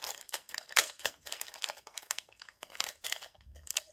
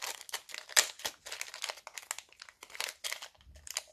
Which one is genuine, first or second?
second